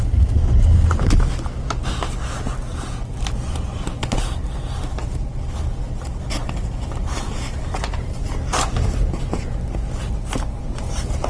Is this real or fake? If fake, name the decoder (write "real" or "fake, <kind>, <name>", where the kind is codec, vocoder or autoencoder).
real